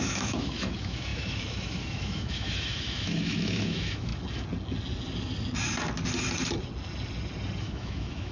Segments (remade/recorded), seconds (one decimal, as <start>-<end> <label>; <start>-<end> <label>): 0.0-4.1 remade; 4.1-7.6 recorded; 7.6-8.3 remade